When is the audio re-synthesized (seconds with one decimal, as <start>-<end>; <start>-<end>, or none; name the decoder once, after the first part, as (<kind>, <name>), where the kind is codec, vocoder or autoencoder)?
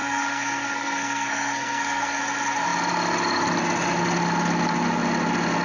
0.0-2.2 (codec, SNAC)